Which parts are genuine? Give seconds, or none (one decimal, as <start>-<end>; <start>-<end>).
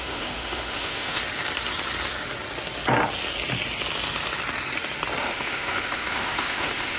1.2-5.2